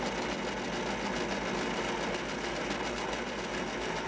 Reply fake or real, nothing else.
real